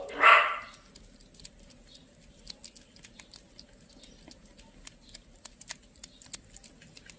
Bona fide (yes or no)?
yes